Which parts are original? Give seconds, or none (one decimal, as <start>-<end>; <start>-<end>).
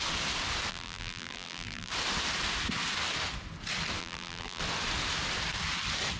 0.0-0.7; 1.9-4.0; 4.6-6.2